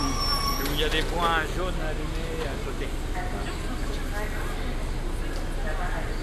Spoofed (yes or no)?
no